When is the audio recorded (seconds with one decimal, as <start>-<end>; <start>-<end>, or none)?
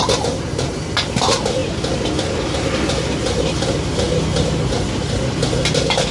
0.0-6.1